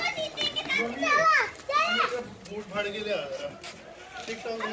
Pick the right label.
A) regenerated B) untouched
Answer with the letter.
B